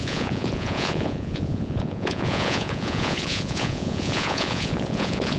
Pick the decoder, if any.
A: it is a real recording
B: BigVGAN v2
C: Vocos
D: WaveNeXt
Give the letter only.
C